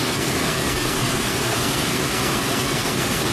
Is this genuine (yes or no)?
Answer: no